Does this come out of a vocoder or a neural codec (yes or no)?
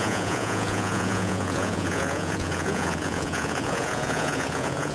yes